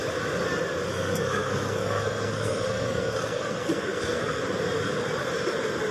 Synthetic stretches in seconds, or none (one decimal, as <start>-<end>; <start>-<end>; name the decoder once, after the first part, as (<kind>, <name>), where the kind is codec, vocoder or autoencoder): 0.9-4.4 (codec, SNAC)